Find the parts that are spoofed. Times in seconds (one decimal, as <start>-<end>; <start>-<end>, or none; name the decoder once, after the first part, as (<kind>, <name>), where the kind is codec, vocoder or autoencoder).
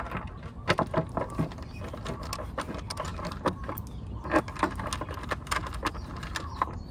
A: none